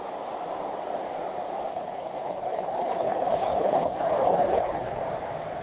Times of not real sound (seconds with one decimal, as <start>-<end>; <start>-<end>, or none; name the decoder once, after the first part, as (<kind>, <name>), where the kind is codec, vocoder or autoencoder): 1.7-5.0 (codec, HILCodec)